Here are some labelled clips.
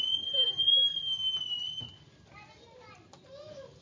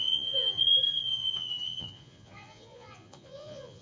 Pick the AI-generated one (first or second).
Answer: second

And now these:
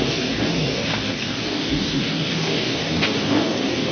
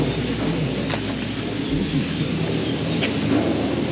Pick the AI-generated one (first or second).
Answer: first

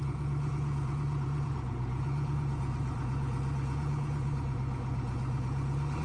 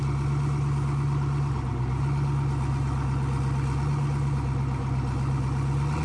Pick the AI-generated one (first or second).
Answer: first